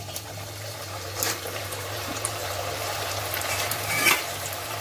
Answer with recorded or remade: remade